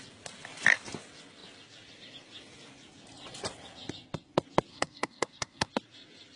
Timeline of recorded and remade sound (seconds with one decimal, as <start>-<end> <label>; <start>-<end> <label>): 0.0-4.7 recorded; 4.7-5.7 remade; 5.7-6.4 recorded